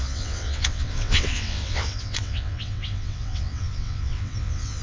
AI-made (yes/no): yes